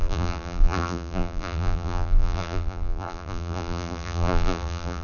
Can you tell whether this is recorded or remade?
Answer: remade